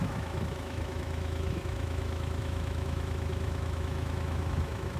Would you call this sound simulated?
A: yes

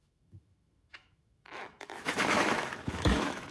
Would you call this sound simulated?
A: yes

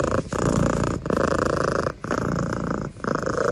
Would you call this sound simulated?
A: no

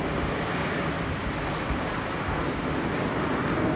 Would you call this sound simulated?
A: no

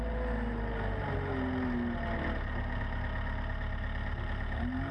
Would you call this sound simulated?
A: no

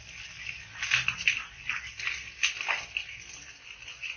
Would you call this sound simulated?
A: no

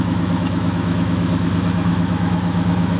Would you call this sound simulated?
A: yes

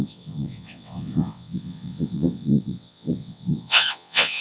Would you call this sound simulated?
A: yes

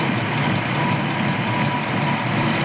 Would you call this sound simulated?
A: yes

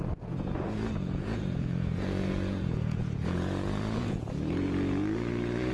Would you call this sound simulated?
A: yes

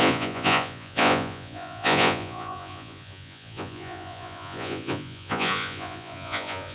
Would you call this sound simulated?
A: yes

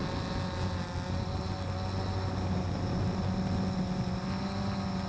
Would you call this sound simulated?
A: no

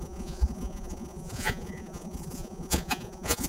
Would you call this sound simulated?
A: yes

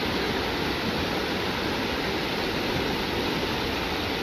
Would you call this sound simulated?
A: no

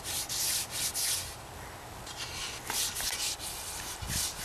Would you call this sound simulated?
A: no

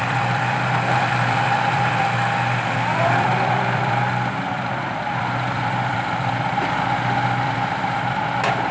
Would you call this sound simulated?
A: yes